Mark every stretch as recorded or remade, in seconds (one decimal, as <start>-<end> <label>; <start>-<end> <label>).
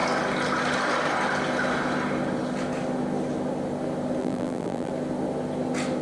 0.0-4.2 recorded; 4.2-4.9 remade; 4.9-6.0 recorded